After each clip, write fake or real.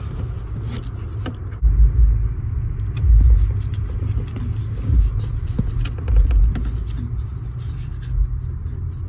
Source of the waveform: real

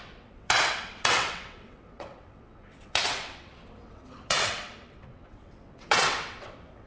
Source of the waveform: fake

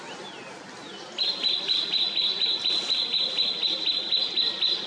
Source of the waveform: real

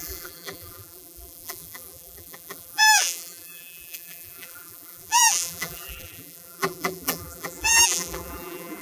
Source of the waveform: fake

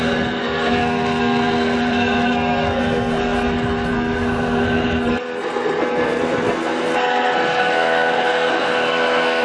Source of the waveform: fake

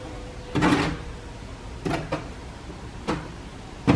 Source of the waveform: real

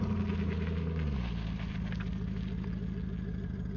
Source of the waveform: real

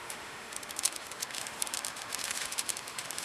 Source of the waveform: fake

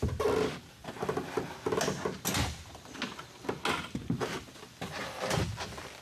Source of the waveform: real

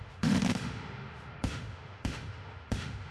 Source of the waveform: fake